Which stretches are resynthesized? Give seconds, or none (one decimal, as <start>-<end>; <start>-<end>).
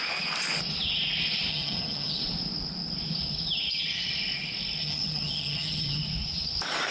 1.5-2.2; 4.8-6.0